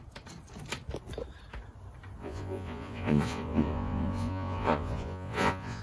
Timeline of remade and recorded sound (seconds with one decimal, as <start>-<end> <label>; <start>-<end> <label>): 0.0-2.2 recorded; 2.2-5.8 remade